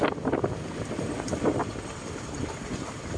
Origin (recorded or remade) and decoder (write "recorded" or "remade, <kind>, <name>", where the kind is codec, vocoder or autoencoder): recorded